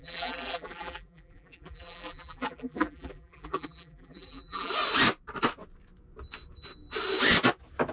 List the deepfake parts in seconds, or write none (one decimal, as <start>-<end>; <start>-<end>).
0.0-4.7

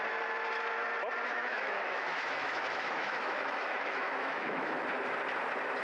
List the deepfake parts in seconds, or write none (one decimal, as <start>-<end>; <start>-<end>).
1.3-4.8

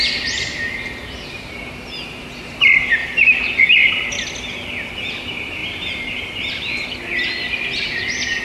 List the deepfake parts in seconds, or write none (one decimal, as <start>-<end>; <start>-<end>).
3.0-5.0; 5.6-8.4